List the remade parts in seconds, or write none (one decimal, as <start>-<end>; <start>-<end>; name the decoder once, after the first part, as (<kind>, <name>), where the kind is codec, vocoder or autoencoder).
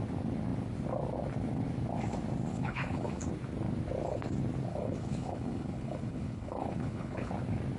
2.5-3.3 (codec, HILCodec); 4.7-7.3